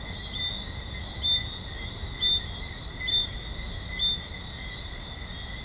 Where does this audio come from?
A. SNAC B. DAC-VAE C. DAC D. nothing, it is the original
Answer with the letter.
D